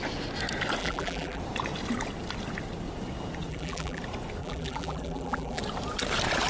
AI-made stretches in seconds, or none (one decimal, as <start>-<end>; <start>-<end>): 0.8-1.4; 3.5-4.0; 4.4-5.6

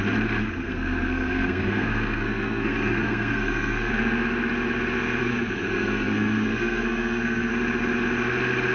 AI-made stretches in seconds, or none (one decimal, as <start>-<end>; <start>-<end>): 0.4-3.9; 5.2-7.5

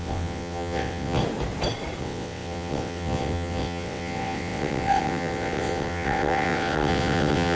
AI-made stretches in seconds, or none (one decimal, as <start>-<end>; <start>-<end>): 0.0-1.2; 2.0-7.6